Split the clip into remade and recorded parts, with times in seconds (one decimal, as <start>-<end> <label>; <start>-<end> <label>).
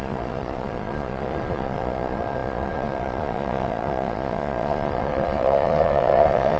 0.0-6.6 remade